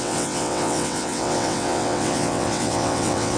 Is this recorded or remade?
remade